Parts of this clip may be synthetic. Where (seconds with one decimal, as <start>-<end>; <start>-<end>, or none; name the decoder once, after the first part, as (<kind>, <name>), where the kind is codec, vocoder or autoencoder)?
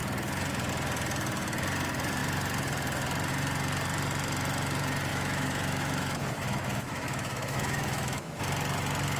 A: 5.1-8.4 (autoencoder, DAC-VAE)